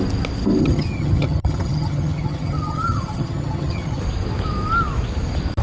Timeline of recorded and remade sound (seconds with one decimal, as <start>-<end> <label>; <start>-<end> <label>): 0.0-0.6 recorded; 0.6-4.0 remade; 4.0-5.6 recorded